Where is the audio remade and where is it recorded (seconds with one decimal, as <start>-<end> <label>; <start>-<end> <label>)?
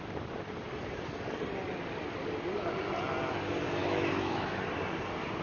0.0-3.8 recorded; 3.8-4.6 remade; 4.6-5.4 recorded